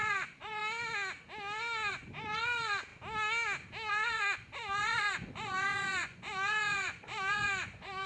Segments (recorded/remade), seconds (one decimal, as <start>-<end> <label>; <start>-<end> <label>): 0.0-0.6 remade; 0.6-1.9 recorded; 1.9-2.9 remade; 2.9-3.9 recorded; 3.9-8.1 remade